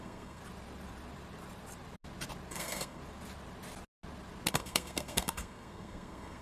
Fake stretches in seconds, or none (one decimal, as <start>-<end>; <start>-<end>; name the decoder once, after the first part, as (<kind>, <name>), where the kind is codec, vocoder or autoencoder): 0.0-0.4 (codec, SNAC); 2.5-3.0; 4.5-6.4